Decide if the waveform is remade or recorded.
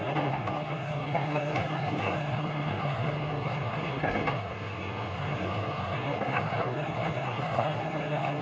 remade